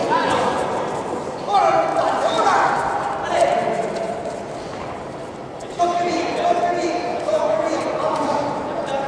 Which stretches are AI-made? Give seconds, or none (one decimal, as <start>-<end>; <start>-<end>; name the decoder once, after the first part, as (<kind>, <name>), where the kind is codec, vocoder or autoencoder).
0.0-0.6 (vocoder, Vocos); 7.1-7.8